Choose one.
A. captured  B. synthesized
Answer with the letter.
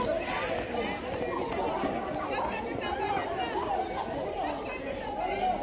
A